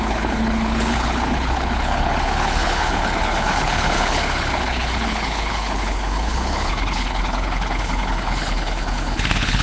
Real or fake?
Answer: fake